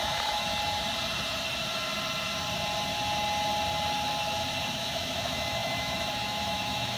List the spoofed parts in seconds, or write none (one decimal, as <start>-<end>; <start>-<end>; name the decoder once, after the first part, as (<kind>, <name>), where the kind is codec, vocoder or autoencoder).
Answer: 0.0-0.5 (autoencoder, DAC-VAE); 4.7-7.0